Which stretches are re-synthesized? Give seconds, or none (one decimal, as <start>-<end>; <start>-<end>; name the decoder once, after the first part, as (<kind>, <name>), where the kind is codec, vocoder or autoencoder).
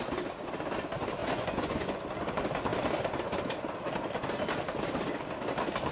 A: 1.2-2.0 (vocoder, Vocos)